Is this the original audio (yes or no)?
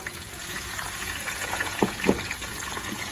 no